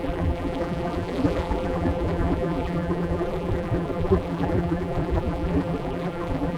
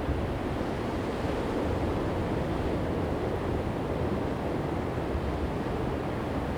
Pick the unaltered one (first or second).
second